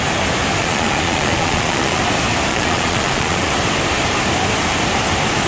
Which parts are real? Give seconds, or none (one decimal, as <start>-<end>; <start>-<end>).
0.0-0.6; 2.0-2.5; 3.5-5.5